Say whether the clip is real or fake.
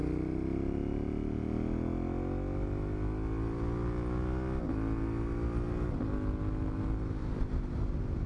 real